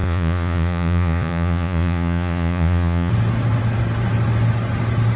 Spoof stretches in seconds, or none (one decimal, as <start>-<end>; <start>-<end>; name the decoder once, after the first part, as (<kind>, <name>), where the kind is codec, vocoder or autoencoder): 0.0-3.1 (vocoder, Vocos)